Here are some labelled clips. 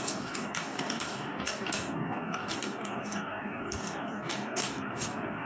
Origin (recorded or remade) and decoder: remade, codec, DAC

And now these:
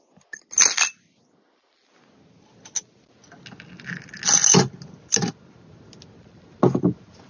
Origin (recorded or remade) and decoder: recorded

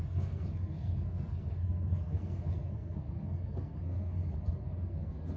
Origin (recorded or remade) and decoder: remade, codec, SNAC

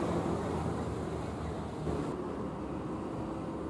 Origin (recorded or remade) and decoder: recorded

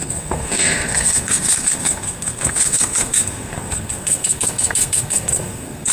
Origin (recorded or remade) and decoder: remade, codec, SNAC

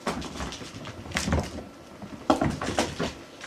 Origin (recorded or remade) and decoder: recorded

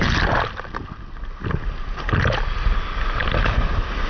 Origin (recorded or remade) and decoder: recorded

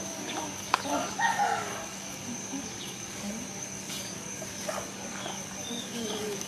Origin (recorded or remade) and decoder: remade, codec, DAC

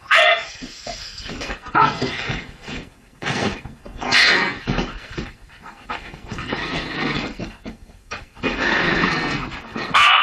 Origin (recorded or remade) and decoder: remade, codec, SNAC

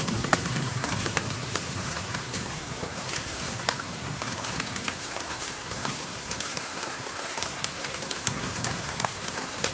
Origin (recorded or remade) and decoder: remade, codec, SNAC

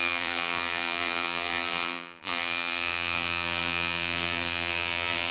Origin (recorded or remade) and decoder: remade, vocoder, BigVGAN v2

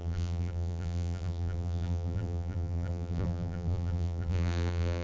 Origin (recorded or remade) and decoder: remade, vocoder, BigVGAN v2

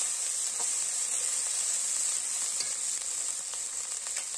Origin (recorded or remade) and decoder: recorded